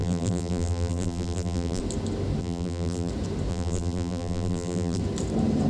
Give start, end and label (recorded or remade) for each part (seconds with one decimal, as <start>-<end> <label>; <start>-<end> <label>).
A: 0.0-1.8 remade; 1.8-2.4 recorded; 2.4-3.1 remade; 3.1-3.5 recorded; 3.5-5.0 remade; 5.0-5.7 recorded